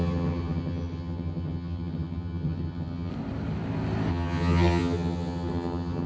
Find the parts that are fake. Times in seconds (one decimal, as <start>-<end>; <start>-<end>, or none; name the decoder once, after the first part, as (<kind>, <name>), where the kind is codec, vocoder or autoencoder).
0.0-3.1 (vocoder, HiFi-GAN); 4.1-6.1